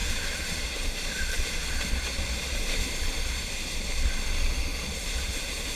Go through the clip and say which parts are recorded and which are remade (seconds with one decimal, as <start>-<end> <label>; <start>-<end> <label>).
0.0-3.5 remade; 3.5-4.7 recorded; 4.7-5.3 remade; 5.3-5.8 recorded

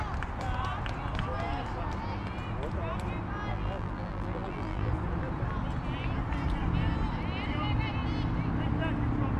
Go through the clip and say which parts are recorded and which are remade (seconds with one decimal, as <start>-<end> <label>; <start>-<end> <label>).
0.0-3.5 recorded; 3.5-4.9 remade; 4.9-9.4 recorded

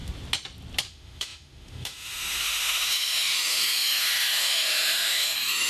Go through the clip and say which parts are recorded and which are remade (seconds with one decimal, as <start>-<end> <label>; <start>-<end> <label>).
0.0-0.9 recorded; 0.9-5.7 remade

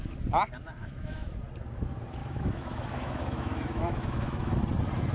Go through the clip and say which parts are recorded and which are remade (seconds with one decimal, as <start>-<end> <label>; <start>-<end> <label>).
0.0-0.8 recorded; 0.8-1.3 remade; 1.3-2.2 recorded; 2.2-4.6 remade; 4.6-5.1 recorded

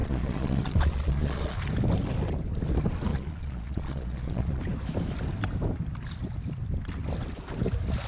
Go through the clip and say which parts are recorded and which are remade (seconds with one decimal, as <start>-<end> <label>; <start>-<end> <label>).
0.0-1.7 remade; 1.7-3.1 recorded; 3.1-4.6 remade; 4.6-8.1 recorded

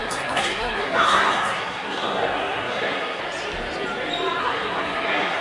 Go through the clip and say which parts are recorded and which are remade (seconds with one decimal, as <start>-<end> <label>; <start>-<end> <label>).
0.0-3.2 remade; 3.2-4.4 recorded; 4.4-5.4 remade

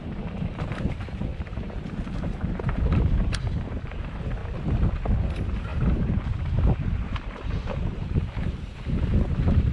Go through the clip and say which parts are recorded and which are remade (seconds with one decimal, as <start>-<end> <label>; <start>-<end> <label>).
0.0-4.4 remade; 4.4-5.2 recorded; 5.2-9.7 remade